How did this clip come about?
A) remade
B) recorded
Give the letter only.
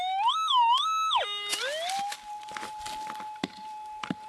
B